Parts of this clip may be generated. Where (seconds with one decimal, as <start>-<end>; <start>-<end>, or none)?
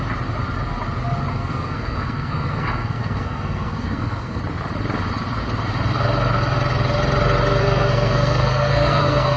1.3-4.4; 7.6-9.4